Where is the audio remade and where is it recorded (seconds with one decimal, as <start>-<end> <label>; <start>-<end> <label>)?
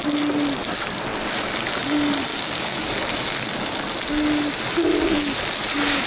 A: 0.0-2.3 recorded; 2.3-2.9 remade; 2.9-6.1 recorded